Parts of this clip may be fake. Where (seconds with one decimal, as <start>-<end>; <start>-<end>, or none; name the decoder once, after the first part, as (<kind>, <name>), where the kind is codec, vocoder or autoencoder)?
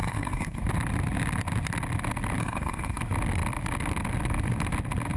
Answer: 0.0-0.6 (codec, SNAC); 2.4-3.0